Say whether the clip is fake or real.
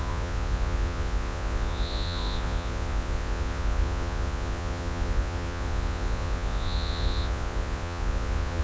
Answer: fake